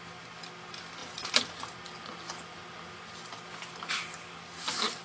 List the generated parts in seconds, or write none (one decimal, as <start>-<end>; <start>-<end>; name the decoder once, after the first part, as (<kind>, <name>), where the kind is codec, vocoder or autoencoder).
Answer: none